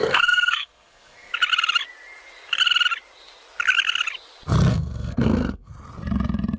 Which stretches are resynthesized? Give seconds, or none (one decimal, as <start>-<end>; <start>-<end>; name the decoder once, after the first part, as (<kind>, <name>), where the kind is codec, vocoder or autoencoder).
0.0-1.3 (codec, SNAC); 4.7-5.7